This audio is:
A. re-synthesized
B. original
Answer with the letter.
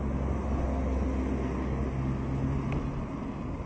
B